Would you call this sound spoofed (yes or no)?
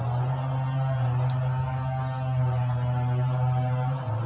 no